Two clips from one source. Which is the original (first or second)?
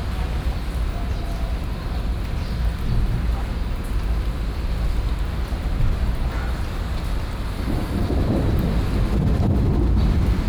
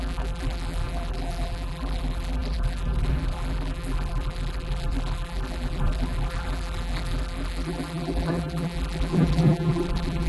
first